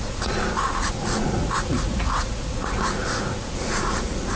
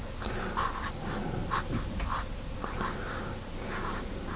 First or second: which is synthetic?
first